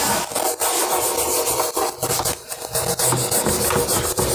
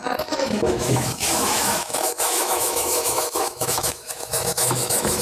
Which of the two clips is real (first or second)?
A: first